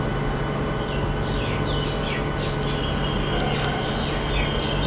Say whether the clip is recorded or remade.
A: recorded